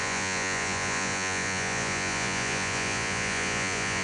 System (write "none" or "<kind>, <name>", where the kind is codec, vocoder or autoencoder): vocoder, Vocos